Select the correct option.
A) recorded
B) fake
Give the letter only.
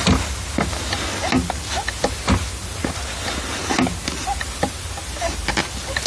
A